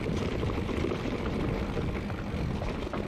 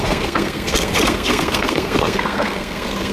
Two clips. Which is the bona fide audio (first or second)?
first